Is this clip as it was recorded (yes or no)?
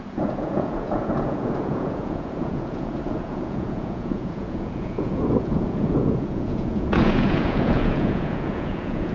no